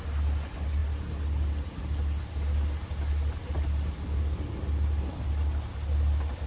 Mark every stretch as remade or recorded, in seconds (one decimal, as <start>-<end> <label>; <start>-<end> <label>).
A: 0.0-6.5 recorded